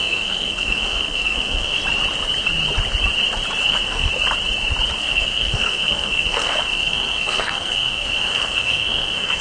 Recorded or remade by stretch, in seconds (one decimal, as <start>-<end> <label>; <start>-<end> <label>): 0.0-1.8 remade; 1.8-3.6 recorded; 3.6-4.1 remade; 4.1-5.0 recorded; 5.0-9.4 remade